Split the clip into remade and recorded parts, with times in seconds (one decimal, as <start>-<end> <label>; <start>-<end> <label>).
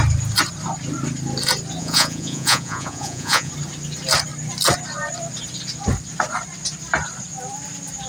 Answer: 0.0-1.8 recorded; 1.8-3.5 remade; 3.5-8.1 recorded